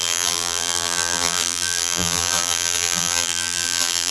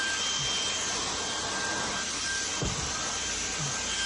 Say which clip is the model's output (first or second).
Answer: first